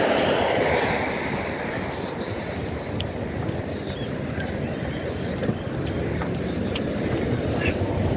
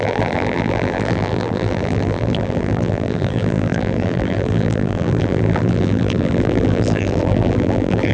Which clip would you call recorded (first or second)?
first